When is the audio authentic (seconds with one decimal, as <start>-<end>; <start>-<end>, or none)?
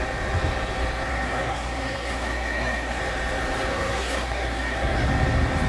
0.0-1.1; 3.0-3.7; 5.1-5.7